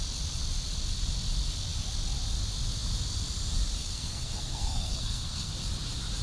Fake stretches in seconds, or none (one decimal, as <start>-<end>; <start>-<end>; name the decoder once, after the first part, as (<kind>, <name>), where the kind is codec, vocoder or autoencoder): 3.8-5.5 (codec, SNAC)